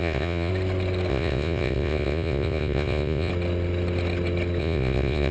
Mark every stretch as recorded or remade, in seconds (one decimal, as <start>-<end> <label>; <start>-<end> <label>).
0.0-0.5 remade; 0.5-1.1 recorded; 1.1-3.3 remade; 3.3-4.6 recorded; 4.6-5.3 remade